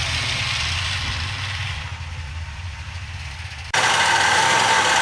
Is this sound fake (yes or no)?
no